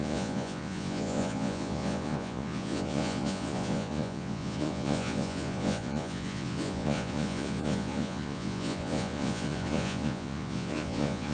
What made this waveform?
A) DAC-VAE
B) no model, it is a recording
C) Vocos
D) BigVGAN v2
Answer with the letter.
C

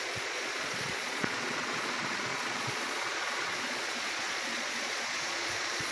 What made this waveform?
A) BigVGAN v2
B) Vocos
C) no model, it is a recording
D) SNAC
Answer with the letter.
B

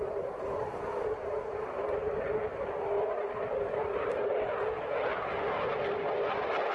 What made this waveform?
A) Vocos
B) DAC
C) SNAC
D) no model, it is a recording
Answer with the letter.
D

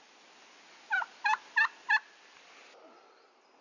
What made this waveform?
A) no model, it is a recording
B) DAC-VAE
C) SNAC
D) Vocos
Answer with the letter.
A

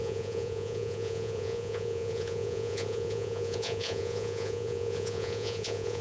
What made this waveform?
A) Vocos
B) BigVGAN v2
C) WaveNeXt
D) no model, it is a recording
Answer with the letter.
A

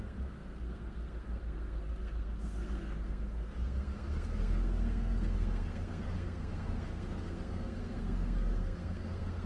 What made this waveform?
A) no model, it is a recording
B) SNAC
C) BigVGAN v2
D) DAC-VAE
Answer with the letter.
B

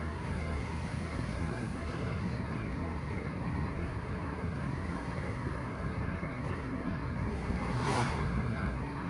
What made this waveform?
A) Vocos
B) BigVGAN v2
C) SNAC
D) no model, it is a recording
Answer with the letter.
C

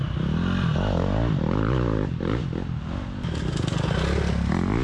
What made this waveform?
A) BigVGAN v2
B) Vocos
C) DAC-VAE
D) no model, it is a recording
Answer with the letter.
D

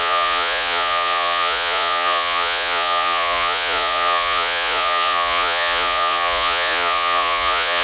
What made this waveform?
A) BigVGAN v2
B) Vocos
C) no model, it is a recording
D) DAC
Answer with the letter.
B